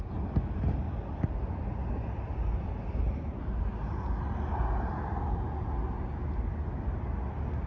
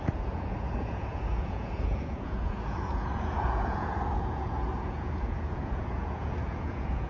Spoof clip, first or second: second